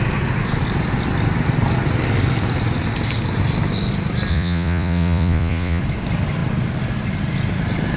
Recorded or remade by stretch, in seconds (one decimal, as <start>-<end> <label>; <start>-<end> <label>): 0.0-4.3 recorded; 4.3-5.8 remade; 5.8-8.0 recorded